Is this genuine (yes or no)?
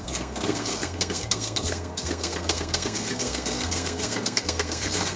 no